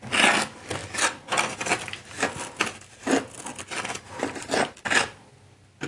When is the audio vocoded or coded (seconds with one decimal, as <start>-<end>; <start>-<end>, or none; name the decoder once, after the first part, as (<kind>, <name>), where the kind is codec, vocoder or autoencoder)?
none